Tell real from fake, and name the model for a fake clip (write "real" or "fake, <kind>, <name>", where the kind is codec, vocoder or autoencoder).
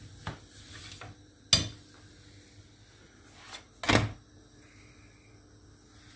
real